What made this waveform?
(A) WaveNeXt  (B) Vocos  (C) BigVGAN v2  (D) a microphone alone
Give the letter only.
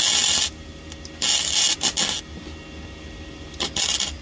D